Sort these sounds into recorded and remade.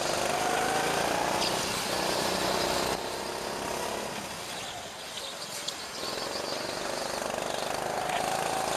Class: recorded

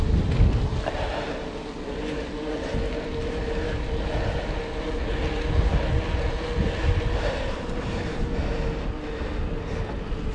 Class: recorded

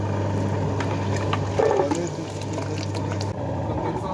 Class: recorded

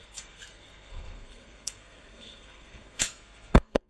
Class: remade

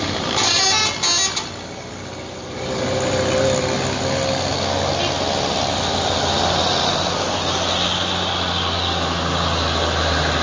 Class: recorded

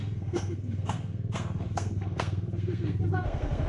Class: remade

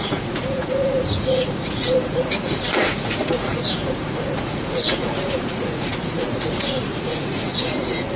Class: remade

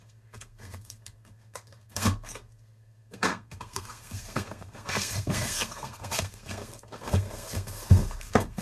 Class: remade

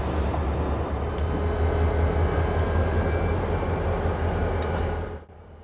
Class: recorded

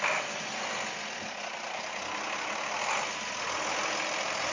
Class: recorded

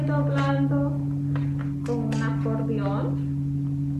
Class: recorded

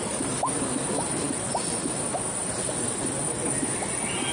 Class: recorded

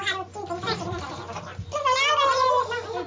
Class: recorded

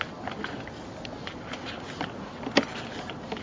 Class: recorded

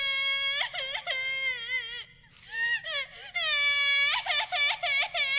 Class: recorded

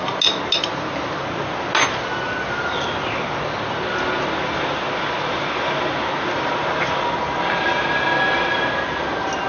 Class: recorded